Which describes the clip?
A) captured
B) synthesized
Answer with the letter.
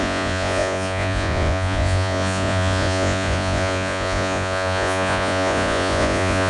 B